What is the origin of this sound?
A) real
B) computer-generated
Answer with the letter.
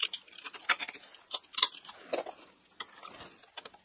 A